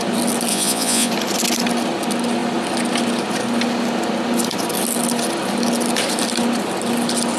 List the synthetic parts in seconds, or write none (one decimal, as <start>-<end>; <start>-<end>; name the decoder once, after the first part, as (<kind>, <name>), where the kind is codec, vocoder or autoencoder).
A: 0.5-1.1 (vocoder, Vocos)